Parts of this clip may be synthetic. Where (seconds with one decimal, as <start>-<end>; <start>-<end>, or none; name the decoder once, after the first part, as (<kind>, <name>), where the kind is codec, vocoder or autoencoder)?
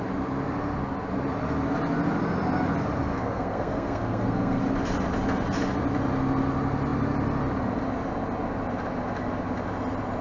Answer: 3.1-4.6 (codec, SNAC)